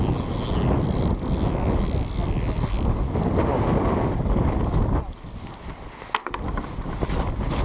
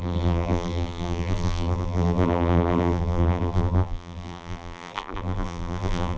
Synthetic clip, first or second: second